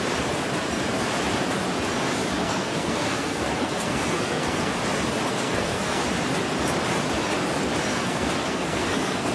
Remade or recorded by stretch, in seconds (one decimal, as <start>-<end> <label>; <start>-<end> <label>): 0.0-2.4 recorded; 2.4-4.8 remade; 4.8-5.3 recorded; 5.3-6.0 remade; 6.0-7.9 recorded; 7.9-9.3 remade